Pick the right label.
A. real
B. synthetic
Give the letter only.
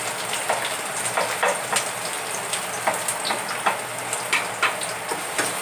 A